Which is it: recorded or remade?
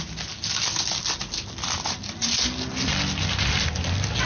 recorded